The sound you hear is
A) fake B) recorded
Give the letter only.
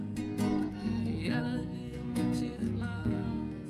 A